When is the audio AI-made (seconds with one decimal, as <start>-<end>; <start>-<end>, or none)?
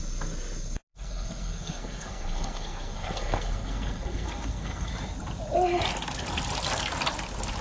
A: 0.9-4.9